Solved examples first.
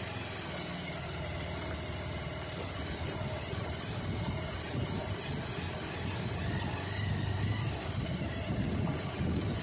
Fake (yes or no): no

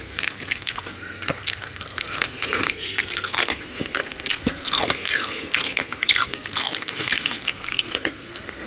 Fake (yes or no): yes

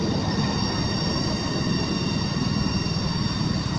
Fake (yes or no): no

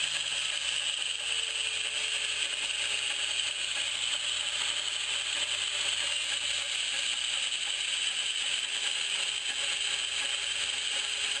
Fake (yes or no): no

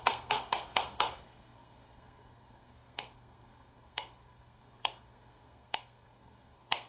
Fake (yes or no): yes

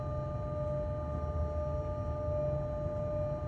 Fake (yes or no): no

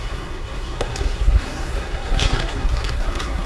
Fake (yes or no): yes